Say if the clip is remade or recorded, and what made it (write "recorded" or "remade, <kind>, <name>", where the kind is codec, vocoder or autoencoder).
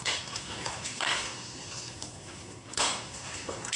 remade, codec, SNAC